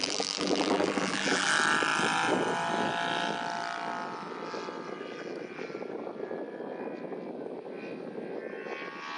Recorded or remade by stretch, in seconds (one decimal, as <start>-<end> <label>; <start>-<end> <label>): 0.0-1.5 remade; 1.5-9.2 recorded